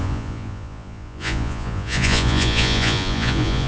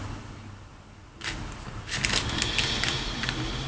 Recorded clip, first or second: second